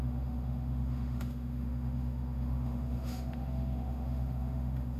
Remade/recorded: remade